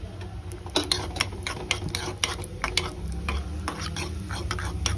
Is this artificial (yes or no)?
no